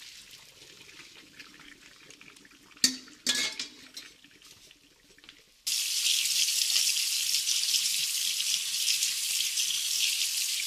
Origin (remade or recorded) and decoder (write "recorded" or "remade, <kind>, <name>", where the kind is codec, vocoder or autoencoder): recorded